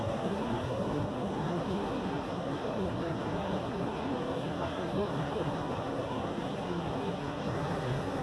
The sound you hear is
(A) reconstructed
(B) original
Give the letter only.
A